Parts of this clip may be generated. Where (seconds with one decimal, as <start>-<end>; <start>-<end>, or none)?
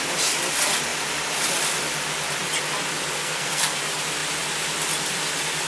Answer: 3.2-3.8